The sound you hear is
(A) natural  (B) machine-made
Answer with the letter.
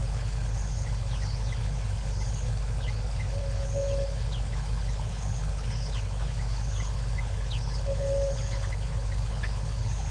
B